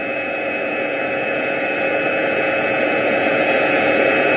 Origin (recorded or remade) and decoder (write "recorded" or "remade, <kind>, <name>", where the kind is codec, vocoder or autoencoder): remade, vocoder, Vocos